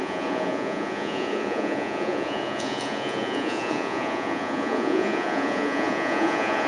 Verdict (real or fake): fake